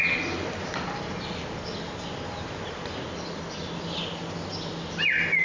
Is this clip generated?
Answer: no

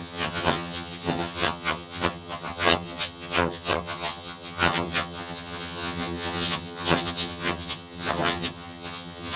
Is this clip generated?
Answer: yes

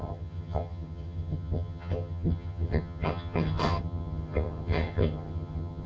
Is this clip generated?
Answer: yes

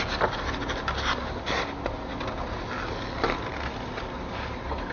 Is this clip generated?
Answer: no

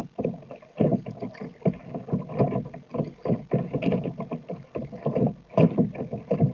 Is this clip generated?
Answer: no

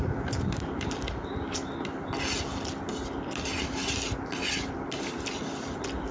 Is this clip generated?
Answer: no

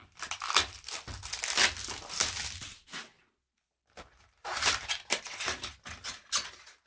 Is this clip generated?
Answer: no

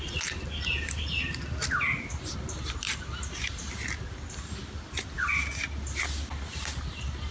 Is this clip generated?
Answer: no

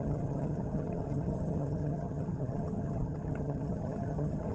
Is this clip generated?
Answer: yes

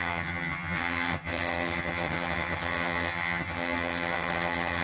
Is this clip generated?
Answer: yes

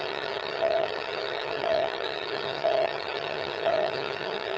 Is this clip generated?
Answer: yes